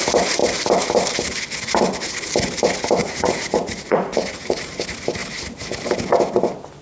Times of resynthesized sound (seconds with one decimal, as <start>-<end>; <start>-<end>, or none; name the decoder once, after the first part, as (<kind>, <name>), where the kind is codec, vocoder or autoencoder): 3.0-4.6 (vocoder, Vocos)